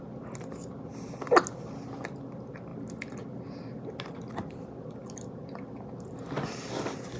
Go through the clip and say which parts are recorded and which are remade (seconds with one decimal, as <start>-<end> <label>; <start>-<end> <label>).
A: 0.0-7.2 recorded